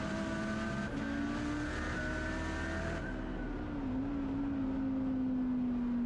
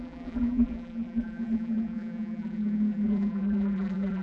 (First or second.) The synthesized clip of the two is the second